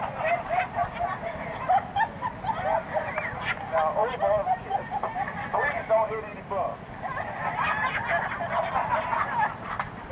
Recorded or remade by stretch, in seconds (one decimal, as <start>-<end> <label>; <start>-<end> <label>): 0.0-4.0 recorded; 4.0-4.9 remade; 4.9-10.1 recorded